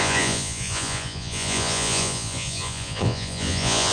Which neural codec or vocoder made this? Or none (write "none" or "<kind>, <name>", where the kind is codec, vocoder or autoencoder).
vocoder, Vocos